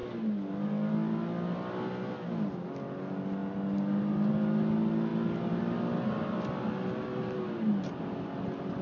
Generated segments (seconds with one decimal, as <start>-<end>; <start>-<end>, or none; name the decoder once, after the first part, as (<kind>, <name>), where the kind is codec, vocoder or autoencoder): none